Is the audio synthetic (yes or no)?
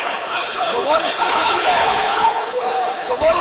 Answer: yes